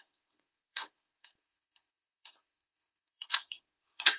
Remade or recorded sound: remade